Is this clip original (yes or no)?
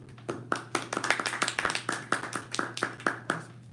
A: yes